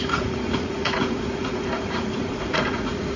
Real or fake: fake